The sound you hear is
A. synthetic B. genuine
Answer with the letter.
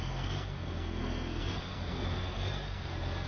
A